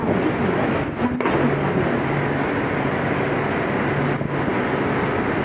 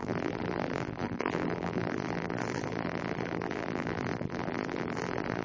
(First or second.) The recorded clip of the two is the first